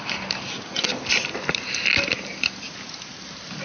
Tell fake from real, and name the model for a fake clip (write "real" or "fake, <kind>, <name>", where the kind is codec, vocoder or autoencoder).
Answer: real